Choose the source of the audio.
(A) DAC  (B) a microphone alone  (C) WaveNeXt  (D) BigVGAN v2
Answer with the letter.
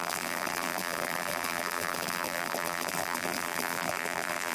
D